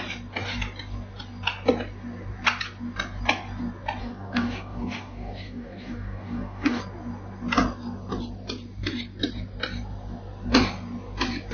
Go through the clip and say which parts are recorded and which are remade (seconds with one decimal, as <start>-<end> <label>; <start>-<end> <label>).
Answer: 0.0-4.0 recorded; 4.0-6.8 remade; 6.8-11.5 recorded